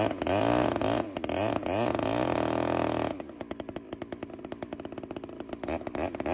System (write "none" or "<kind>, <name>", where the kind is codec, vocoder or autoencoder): none